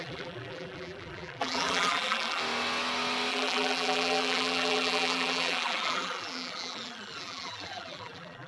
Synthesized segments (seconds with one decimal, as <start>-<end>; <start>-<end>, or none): 0.0-2.4; 3.3-8.5